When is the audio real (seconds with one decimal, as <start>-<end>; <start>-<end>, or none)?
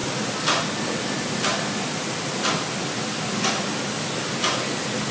0.0-5.1